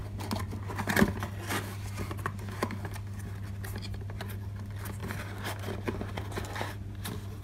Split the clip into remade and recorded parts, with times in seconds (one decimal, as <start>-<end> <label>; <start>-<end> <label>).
0.0-7.4 recorded

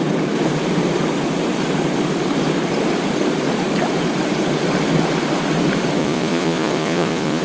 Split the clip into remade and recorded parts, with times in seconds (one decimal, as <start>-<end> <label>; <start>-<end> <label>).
0.0-6.0 recorded; 6.0-7.4 remade

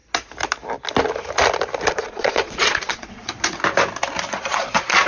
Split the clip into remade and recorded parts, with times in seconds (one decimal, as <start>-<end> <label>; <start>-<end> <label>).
0.0-1.9 recorded; 1.9-3.2 remade; 3.2-4.3 recorded; 4.3-5.1 remade

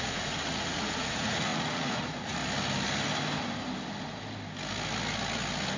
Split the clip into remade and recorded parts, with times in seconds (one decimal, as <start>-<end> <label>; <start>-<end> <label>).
0.0-2.4 remade; 2.4-5.8 recorded

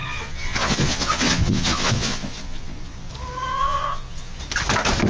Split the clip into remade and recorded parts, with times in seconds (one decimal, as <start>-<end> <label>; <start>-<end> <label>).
0.0-3.1 remade; 3.1-3.5 recorded; 3.5-4.4 remade; 4.4-5.1 recorded

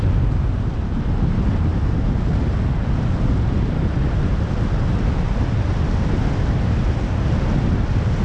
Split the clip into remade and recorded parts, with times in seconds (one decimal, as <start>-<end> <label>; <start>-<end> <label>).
0.0-8.2 recorded

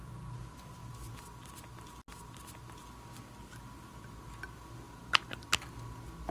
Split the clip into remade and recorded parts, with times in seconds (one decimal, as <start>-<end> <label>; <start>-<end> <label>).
0.0-6.3 recorded